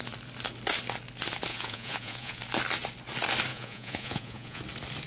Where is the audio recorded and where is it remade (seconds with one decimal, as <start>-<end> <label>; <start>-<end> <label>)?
0.0-1.5 recorded; 1.5-2.4 remade; 2.4-3.5 recorded; 3.5-4.6 remade; 4.6-5.1 recorded